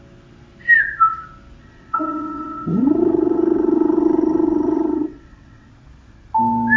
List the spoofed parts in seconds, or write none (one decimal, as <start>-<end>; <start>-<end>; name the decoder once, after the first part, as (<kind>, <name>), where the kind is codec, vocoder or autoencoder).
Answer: 1.6-5.7 (vocoder, WaveNeXt)